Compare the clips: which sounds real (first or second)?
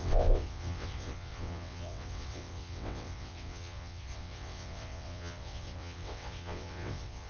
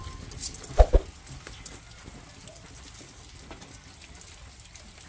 second